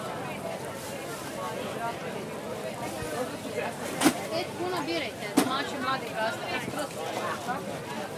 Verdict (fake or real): real